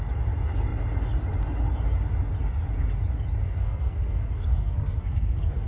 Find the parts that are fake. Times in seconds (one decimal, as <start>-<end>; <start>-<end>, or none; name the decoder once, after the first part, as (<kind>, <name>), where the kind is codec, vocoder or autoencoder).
3.4-5.7 (codec, SNAC)